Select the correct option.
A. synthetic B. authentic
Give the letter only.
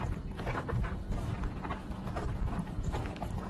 B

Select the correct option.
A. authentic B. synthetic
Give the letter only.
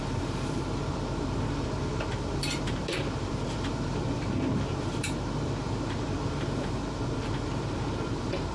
B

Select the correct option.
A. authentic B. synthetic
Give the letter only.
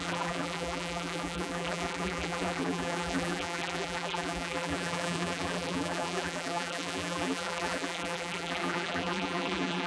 B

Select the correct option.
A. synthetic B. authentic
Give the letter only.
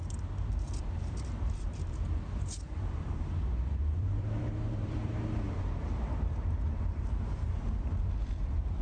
A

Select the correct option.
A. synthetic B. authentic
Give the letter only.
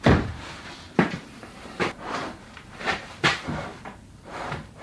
A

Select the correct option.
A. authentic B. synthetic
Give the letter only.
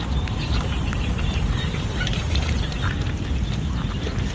B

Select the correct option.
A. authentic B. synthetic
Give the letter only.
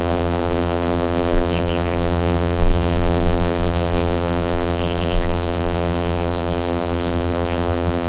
B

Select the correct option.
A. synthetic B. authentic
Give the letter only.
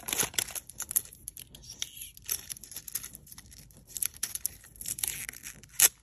B